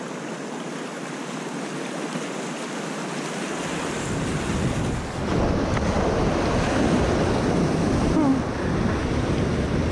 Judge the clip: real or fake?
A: real